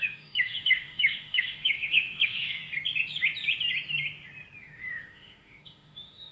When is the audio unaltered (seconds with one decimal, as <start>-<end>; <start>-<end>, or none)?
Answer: 2.6-4.6